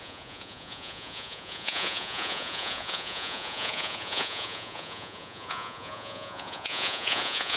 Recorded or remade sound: remade